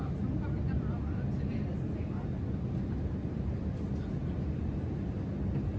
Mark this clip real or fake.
real